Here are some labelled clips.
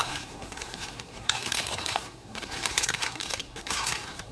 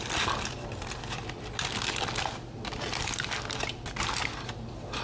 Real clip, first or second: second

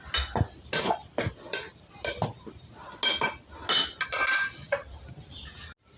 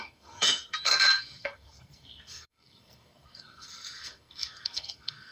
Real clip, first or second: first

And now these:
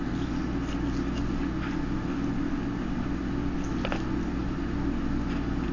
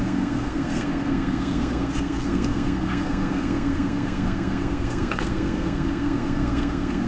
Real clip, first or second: first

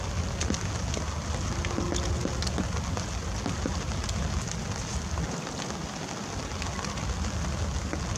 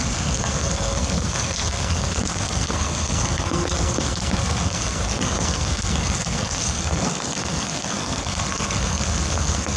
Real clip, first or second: first